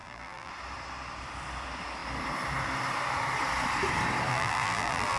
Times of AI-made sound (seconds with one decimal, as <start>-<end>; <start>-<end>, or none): 0.0-0.5; 4.3-5.2